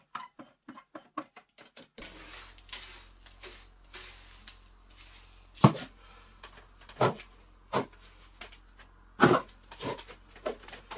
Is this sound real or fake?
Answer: real